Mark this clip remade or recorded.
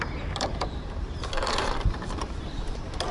remade